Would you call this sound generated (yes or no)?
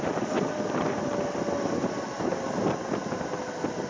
no